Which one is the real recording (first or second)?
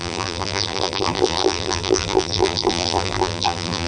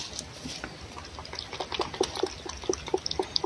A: second